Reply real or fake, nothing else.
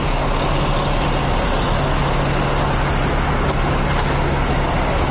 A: real